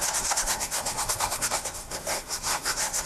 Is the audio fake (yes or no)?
yes